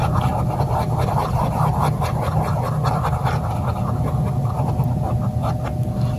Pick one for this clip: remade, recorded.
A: recorded